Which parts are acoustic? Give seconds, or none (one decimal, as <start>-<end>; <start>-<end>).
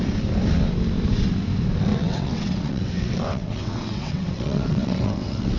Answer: 0.0-1.9